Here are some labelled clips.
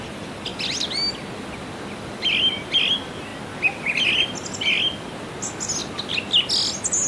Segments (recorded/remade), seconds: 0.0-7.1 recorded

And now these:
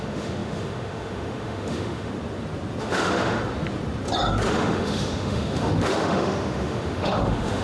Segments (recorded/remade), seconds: 0.0-2.1 remade; 2.1-2.8 recorded; 2.8-3.4 remade; 3.4-4.5 recorded; 4.5-7.6 remade

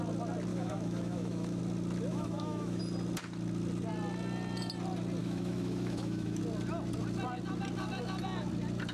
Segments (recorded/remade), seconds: 0.0-0.5 recorded; 0.5-1.6 remade; 1.6-2.1 recorded; 2.1-2.8 remade; 2.8-5.2 recorded; 5.2-6.4 remade; 6.4-8.9 recorded

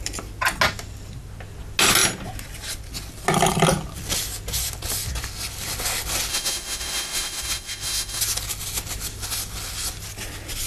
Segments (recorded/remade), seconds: 0.0-6.3 recorded; 6.3-8.2 remade; 8.2-10.7 recorded

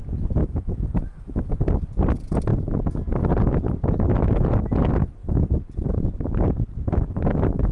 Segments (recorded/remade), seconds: 0.0-0.4 recorded; 0.4-1.5 remade; 1.5-7.7 recorded

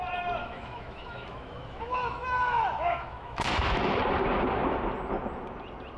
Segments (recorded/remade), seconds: 0.0-0.4 recorded; 0.4-4.0 remade; 4.0-6.0 recorded